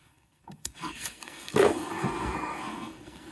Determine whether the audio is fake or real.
fake